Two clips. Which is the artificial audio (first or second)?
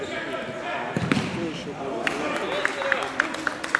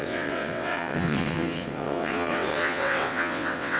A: second